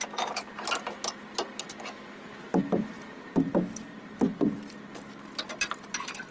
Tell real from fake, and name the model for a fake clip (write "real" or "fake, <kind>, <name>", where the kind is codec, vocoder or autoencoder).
real